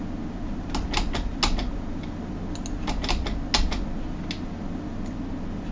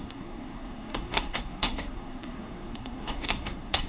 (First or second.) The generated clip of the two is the second